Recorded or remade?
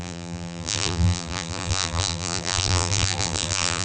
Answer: remade